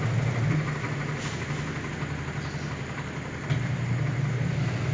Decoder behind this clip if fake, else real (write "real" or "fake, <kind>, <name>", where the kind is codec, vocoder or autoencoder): real